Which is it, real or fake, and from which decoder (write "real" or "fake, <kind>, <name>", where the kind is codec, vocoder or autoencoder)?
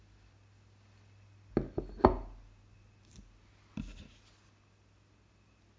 real